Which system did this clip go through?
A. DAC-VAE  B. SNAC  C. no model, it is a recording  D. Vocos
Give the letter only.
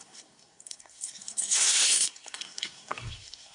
B